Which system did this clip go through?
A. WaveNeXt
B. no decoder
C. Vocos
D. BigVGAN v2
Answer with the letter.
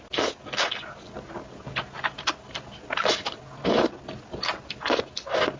B